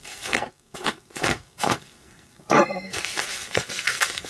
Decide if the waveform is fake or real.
fake